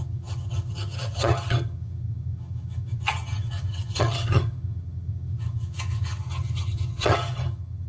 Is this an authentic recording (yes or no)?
no